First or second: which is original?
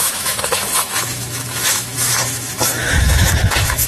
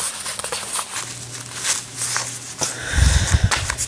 second